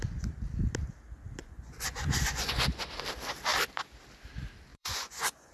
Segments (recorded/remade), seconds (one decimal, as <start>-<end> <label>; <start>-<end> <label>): 0.0-1.4 recorded; 1.4-2.9 remade; 2.9-4.7 recorded; 4.7-5.5 remade